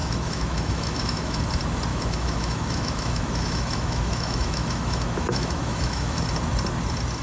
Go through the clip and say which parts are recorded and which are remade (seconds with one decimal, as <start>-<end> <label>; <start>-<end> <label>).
0.0-1.4 remade; 1.4-1.9 recorded; 1.9-6.2 remade; 6.2-7.2 recorded